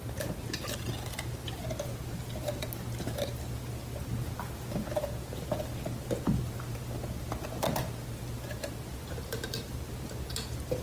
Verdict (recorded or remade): recorded